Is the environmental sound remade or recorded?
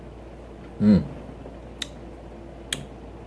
recorded